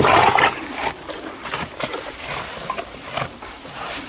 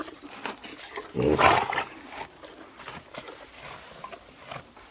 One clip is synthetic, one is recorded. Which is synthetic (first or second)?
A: first